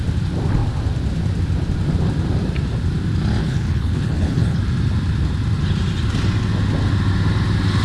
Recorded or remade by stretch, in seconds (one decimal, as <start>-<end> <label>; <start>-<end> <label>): 0.0-3.4 recorded; 3.4-4.6 remade; 4.6-7.8 recorded